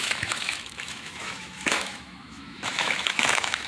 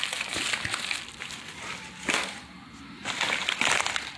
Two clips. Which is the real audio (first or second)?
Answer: second